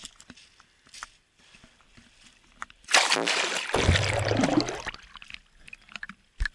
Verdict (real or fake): real